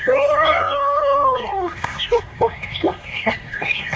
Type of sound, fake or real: fake